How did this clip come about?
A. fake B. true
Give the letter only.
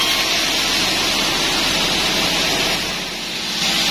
B